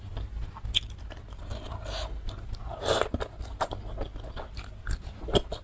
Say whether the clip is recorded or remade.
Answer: recorded